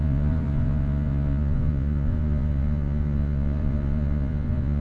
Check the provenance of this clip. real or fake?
fake